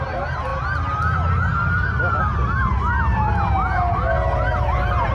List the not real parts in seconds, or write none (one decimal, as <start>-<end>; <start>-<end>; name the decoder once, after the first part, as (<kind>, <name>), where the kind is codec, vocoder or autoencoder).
none